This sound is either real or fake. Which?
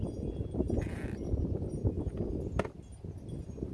real